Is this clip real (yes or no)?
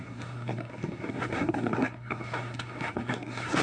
no